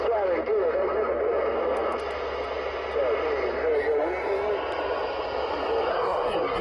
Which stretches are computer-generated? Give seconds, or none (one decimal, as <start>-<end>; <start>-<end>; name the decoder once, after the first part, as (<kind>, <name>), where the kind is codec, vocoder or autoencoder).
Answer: 5.9-6.6 (codec, SNAC)